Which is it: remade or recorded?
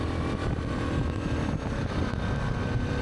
recorded